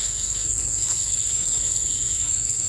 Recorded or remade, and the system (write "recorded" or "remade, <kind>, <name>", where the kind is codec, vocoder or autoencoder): remade, codec, SNAC